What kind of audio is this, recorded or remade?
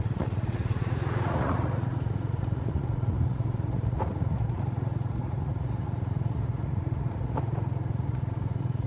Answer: remade